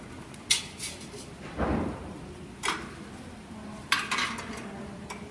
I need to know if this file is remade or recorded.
recorded